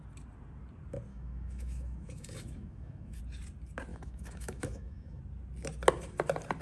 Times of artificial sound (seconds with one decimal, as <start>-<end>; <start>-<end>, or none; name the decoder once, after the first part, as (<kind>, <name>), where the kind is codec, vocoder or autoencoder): 1.1-3.2 (autoencoder, DAC-VAE); 3.9-5.2